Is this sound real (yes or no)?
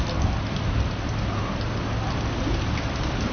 yes